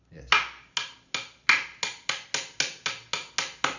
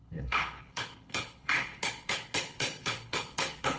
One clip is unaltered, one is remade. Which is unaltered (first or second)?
first